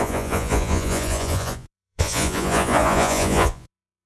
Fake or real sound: fake